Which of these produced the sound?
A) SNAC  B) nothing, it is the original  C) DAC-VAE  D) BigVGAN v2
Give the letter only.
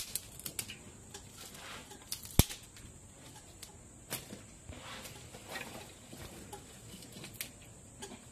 B